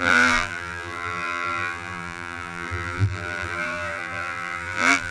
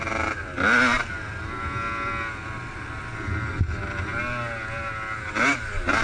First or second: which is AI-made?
first